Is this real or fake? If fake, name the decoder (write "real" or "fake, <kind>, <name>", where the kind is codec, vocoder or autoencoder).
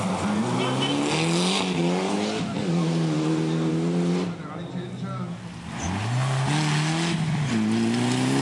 real